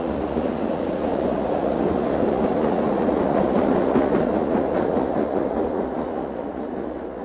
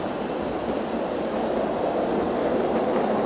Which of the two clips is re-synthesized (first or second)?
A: first